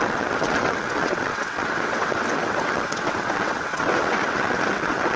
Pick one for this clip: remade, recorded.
remade